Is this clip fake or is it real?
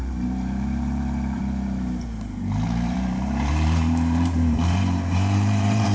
fake